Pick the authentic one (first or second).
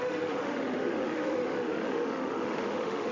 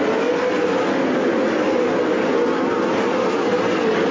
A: second